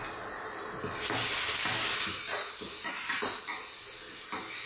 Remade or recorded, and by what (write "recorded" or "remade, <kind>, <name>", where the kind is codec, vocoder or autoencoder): recorded